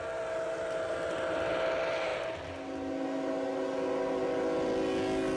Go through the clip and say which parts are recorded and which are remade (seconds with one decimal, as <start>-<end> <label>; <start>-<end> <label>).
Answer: 0.0-5.4 recorded